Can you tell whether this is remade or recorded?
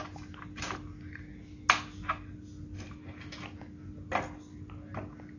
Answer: recorded